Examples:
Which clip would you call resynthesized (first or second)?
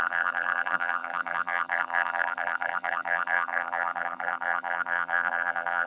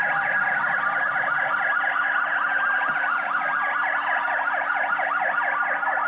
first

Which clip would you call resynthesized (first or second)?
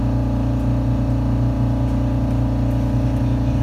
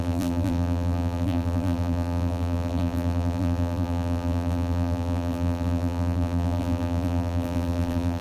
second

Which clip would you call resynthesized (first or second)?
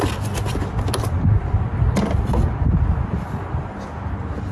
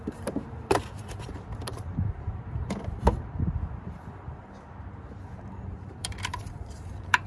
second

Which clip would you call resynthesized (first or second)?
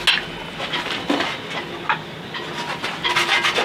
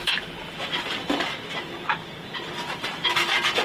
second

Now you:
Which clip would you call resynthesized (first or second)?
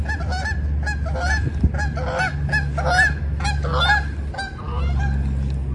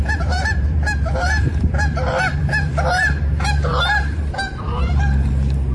second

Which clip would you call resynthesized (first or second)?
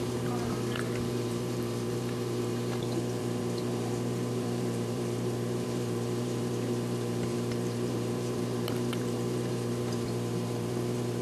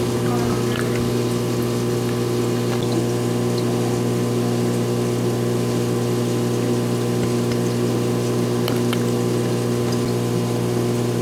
first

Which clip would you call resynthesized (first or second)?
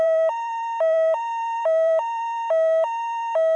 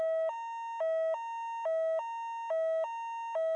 first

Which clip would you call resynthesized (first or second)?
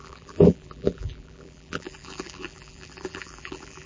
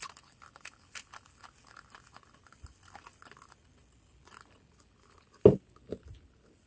first